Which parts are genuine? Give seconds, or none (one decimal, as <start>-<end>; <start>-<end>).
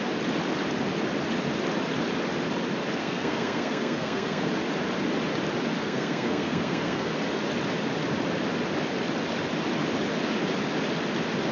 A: 0.0-3.0; 4.5-5.8; 7.1-11.5